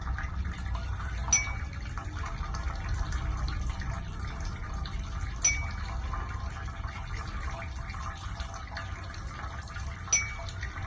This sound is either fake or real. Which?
real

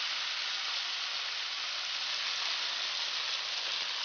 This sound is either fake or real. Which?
real